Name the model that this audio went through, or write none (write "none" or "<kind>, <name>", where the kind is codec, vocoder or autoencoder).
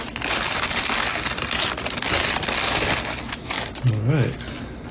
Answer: none